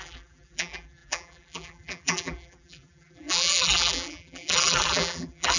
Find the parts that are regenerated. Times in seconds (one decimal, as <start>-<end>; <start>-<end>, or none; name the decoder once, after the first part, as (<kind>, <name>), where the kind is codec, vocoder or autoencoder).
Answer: 0.0-5.6 (vocoder, BigVGAN v2)